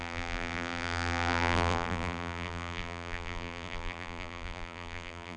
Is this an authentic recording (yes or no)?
no